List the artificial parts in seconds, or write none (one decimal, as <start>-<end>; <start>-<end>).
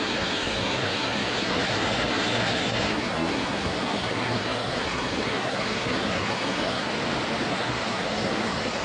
0.0-6.9; 7.5-8.8